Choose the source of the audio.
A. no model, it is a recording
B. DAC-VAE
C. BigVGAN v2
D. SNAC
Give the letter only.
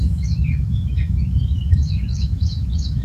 B